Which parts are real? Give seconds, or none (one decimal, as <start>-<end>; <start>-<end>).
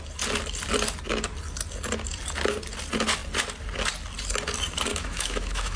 0.0-4.9